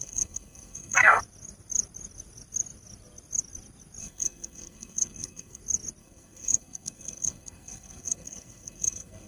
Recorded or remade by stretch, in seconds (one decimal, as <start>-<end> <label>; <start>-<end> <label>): 0.0-1.2 remade; 1.2-4.0 recorded; 4.0-5.6 remade; 5.6-6.0 recorded; 6.0-9.3 remade